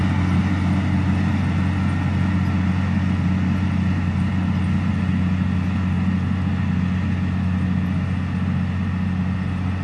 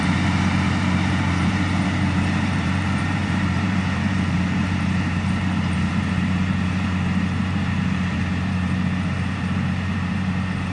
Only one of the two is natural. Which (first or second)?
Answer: first